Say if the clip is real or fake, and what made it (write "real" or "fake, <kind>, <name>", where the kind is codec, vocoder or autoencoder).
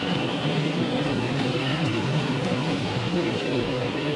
fake, codec, SNAC